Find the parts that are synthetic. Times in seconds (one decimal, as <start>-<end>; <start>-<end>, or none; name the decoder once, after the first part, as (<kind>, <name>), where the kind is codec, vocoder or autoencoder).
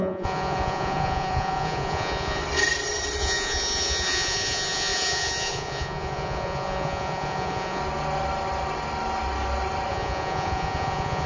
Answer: 0.0-2.4 (vocoder, Vocos); 3.2-7.8; 9.9-11.3